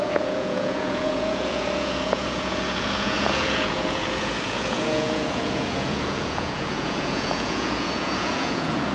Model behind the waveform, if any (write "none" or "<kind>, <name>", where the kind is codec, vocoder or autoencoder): vocoder, Vocos